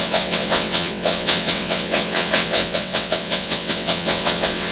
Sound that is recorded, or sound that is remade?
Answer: remade